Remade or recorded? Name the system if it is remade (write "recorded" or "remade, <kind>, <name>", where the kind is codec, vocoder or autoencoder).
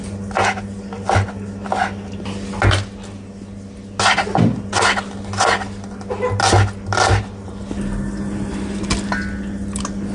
recorded